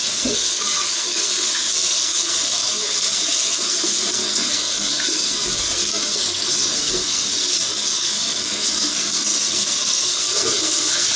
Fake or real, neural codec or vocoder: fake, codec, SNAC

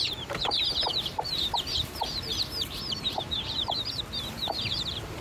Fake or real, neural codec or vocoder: fake, vocoder, BigVGAN v2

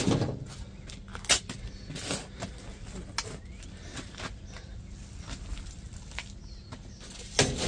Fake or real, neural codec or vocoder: real